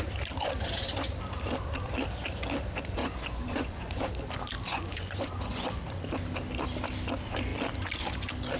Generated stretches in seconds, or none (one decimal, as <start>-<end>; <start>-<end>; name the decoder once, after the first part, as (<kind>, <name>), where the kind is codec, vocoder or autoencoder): 3.0-4.1 (vocoder, Vocos); 4.7-5.8